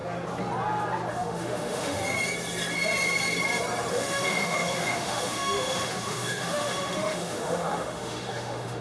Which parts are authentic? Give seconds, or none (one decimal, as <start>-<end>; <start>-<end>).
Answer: 0.0-1.1; 2.0-3.9